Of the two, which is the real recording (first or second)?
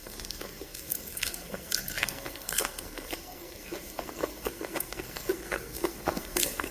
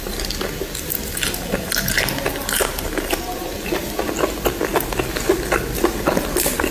second